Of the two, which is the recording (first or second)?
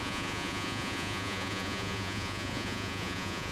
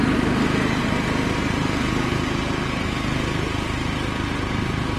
second